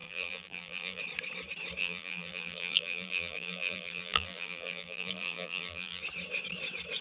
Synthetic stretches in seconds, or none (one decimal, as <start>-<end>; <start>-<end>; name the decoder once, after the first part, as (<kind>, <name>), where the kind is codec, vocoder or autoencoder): 0.0-1.0 (vocoder, BigVGAN v2); 1.8-6.0